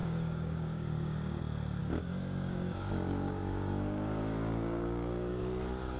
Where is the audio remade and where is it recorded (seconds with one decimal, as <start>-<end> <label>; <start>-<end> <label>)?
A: 0.0-1.4 remade; 1.4-1.8 recorded; 1.8-5.4 remade; 5.4-6.0 recorded